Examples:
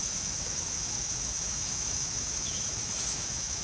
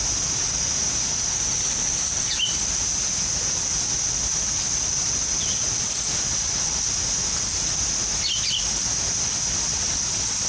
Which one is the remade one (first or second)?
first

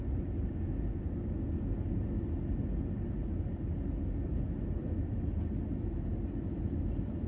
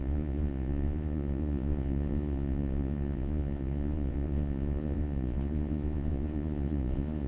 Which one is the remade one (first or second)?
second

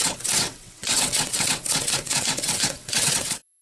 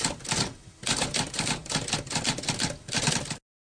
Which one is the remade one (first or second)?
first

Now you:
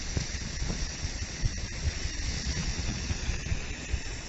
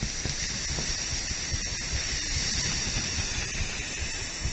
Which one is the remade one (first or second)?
first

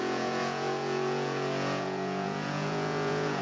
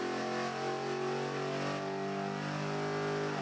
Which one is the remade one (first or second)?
first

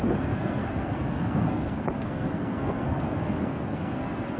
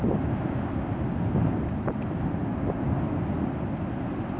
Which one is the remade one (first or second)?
first